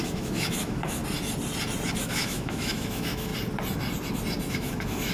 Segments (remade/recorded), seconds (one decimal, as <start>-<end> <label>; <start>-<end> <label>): 0.0-1.0 remade; 1.0-2.0 recorded; 2.0-3.3 remade; 3.3-4.5 recorded; 4.5-5.1 remade